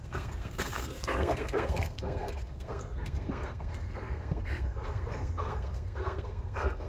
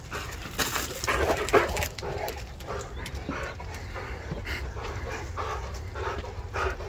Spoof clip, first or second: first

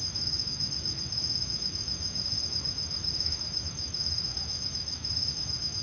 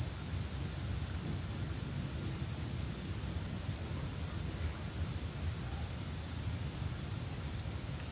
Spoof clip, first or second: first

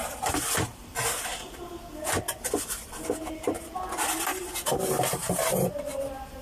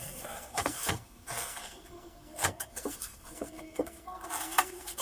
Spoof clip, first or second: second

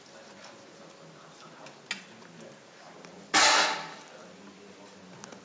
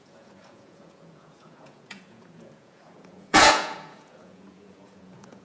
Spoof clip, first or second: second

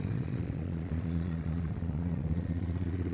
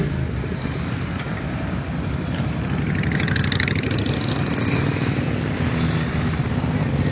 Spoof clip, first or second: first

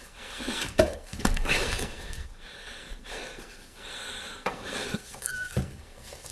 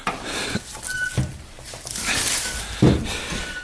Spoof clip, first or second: first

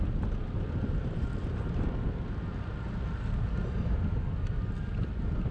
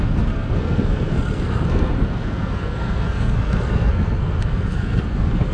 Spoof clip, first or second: second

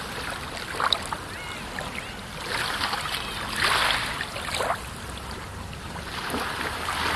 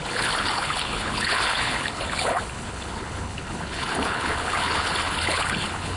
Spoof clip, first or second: second